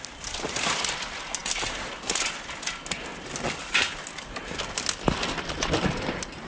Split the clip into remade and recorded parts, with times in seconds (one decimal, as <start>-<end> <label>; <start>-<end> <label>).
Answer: 0.0-6.5 recorded